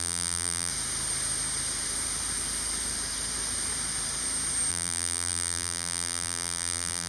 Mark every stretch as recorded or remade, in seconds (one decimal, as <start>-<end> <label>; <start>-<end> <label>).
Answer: 0.0-0.7 remade; 0.7-4.7 recorded; 4.7-7.1 remade